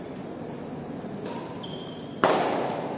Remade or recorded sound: recorded